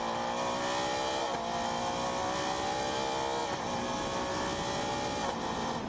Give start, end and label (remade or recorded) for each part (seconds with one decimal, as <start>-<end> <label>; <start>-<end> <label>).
0.0-5.9 recorded